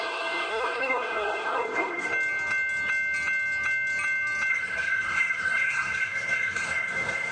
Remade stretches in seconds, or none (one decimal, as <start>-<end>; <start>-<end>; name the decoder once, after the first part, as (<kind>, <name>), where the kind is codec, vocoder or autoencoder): 0.0-2.1 (codec, SNAC); 4.5-7.3